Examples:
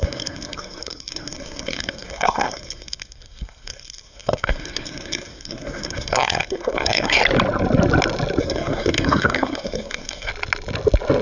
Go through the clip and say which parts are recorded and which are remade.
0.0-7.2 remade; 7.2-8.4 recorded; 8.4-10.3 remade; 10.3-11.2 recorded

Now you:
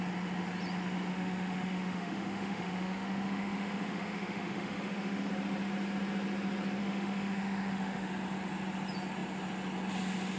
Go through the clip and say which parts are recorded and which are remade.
0.0-1.1 recorded; 1.1-5.3 remade; 5.3-6.8 recorded; 6.8-8.1 remade; 8.1-10.4 recorded

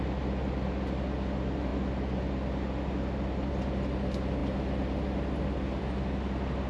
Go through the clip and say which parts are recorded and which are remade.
0.0-6.7 recorded

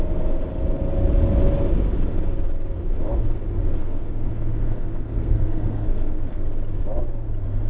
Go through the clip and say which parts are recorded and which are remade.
0.0-3.8 recorded; 3.8-6.4 remade; 6.4-7.7 recorded

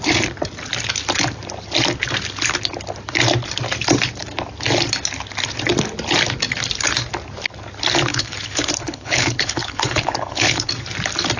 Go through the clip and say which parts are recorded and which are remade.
0.0-8.1 recorded; 8.1-10.7 remade; 10.7-11.4 recorded

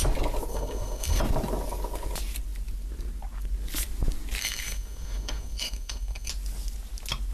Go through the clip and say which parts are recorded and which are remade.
0.0-0.5 recorded; 0.5-1.2 remade; 1.2-4.4 recorded; 4.4-6.3 remade; 6.3-7.3 recorded

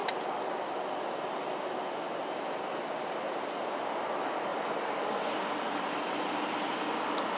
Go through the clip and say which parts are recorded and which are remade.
0.0-7.4 recorded